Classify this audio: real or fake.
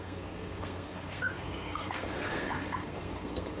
fake